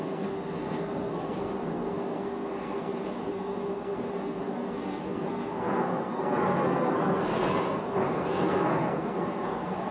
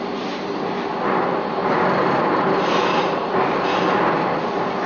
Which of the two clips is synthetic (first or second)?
first